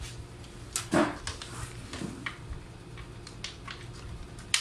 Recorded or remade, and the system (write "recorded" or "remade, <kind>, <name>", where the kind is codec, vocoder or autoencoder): recorded